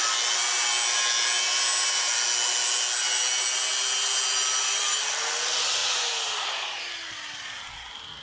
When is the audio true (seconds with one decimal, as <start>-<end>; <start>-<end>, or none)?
0.0-8.2